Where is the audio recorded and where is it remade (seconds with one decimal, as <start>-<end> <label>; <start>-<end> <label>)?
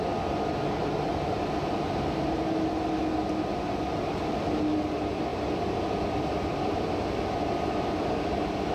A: 0.0-8.7 recorded